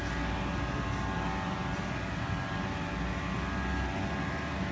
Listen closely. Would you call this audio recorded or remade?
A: recorded